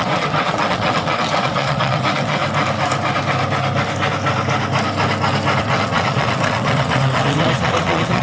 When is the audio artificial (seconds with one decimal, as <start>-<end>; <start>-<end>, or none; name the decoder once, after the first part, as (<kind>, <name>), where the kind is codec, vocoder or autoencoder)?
0.0-2.4 (vocoder, WaveNeXt); 5.6-8.2